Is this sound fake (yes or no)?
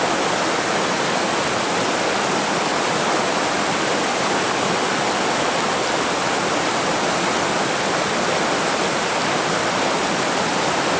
no